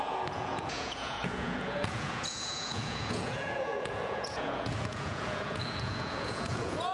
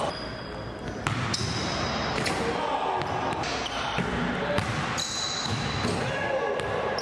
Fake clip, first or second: first